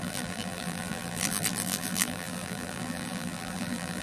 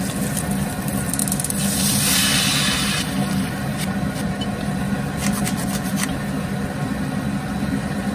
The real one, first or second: second